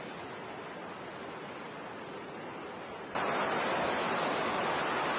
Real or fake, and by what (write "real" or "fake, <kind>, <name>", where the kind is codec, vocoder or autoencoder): real